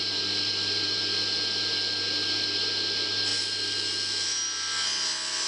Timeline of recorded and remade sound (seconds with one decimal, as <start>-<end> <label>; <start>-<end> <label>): 0.0-3.3 recorded; 3.3-3.9 remade; 3.9-5.5 recorded